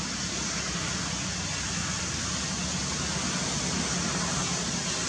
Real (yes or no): yes